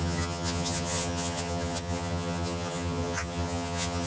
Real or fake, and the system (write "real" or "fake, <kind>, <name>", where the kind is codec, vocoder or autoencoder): fake, vocoder, HiFi-GAN